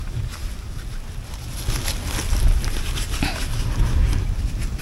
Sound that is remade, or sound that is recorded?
recorded